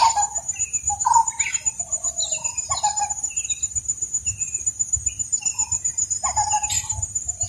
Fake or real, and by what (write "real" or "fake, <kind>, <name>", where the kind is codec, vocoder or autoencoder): real